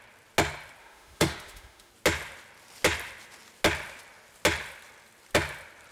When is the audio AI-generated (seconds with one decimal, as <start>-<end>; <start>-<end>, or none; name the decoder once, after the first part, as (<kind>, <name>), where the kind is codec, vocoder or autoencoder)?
0.8-1.9 (autoencoder, DAC-VAE)